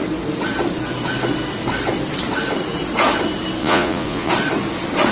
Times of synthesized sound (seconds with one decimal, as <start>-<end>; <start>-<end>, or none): 3.6-4.3